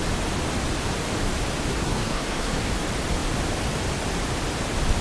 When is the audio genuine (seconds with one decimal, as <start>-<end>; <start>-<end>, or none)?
0.0-1.7; 2.7-5.0